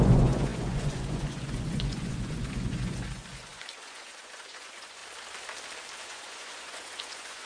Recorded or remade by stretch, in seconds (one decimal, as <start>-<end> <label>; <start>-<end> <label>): 0.0-5.0 remade; 5.0-6.0 recorded; 6.0-7.5 remade